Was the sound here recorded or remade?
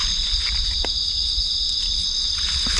recorded